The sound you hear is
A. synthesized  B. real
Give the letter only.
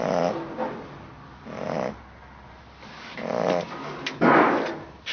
B